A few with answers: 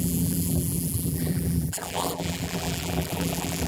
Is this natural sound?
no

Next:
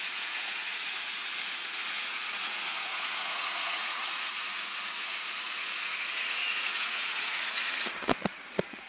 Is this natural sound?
no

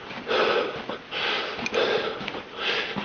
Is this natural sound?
yes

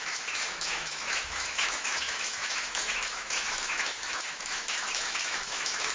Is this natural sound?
no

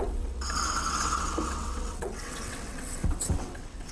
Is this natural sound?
no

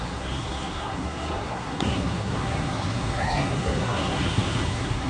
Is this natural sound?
no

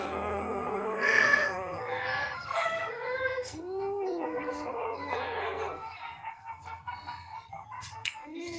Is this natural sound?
no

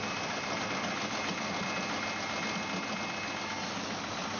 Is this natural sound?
yes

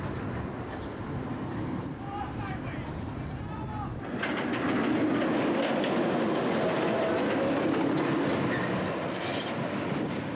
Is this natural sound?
yes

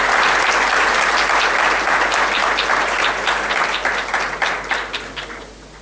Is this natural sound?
yes